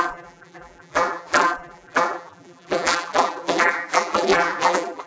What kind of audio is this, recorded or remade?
remade